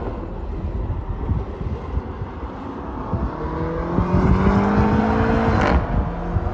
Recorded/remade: recorded